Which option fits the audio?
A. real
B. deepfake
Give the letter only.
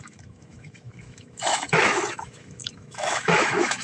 B